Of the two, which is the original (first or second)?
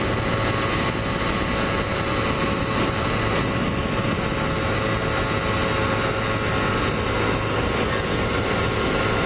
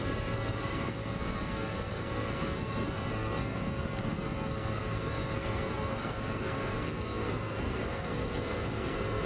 first